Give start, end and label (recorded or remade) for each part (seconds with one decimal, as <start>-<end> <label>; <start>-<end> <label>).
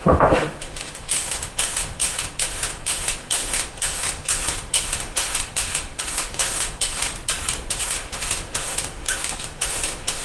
0.0-7.1 remade; 7.1-7.7 recorded; 7.7-10.2 remade